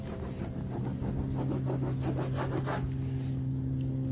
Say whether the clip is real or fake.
real